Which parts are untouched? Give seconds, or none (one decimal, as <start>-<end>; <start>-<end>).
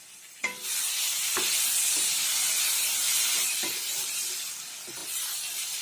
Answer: 0.0-5.8